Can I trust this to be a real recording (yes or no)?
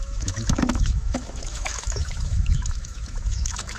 no